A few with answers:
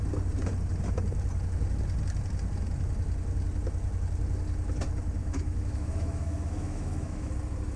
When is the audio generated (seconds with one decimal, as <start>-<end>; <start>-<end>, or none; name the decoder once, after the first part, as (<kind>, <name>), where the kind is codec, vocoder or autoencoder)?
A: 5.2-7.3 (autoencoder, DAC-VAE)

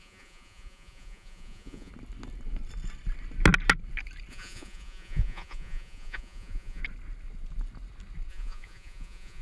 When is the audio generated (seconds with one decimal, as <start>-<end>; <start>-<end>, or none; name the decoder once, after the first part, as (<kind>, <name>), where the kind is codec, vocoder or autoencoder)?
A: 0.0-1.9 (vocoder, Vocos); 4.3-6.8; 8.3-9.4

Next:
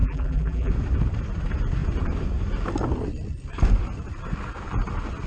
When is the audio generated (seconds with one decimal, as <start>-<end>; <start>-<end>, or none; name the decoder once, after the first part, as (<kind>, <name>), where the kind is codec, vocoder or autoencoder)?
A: 0.0-0.7 (vocoder, BigVGAN v2)

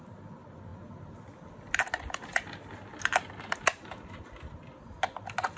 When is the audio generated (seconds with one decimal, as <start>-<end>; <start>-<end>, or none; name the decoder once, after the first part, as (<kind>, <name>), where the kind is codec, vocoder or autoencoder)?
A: none

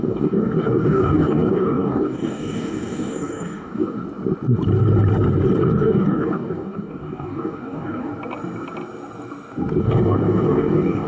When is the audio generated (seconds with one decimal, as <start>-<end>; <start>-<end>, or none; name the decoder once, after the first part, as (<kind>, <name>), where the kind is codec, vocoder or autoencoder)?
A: 0.0-4.0 (codec, DAC); 5.6-8.1; 9.8-11.1